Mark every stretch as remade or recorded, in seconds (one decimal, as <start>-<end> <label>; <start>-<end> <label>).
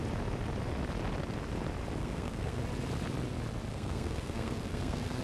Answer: 0.0-2.0 recorded; 2.0-2.6 remade; 2.6-3.7 recorded; 3.7-5.2 remade